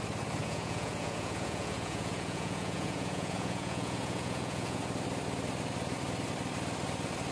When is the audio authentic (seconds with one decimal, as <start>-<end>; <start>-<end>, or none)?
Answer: 0.0-0.4; 4.8-7.3